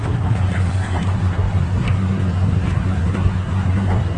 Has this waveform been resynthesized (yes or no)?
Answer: yes